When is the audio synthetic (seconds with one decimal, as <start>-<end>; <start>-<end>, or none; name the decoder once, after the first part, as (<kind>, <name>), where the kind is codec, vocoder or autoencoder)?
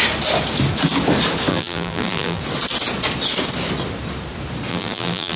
1.5-2.4 (vocoder, BigVGAN v2); 4.7-5.4